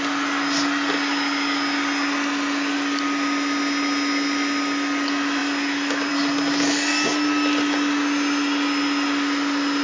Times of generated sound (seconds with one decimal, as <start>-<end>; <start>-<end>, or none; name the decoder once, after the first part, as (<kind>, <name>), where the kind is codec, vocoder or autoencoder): none